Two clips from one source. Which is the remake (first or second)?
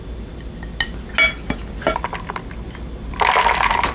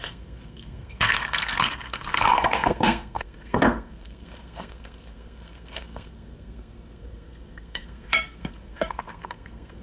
second